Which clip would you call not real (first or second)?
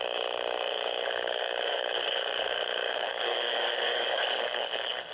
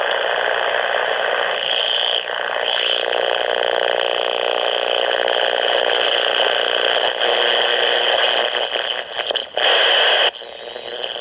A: first